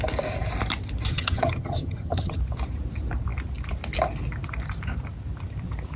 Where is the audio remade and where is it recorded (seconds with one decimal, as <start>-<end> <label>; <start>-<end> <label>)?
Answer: 0.0-1.1 recorded; 1.1-2.4 remade; 2.4-6.0 recorded